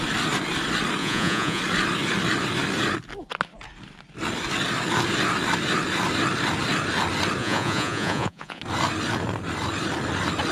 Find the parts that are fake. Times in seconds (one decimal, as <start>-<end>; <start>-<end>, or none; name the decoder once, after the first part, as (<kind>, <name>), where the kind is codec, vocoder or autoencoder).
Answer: 1.0-1.6 (vocoder, Vocos); 7.4-8.6